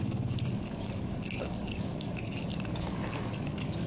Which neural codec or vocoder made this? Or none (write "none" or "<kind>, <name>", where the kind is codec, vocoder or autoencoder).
codec, DAC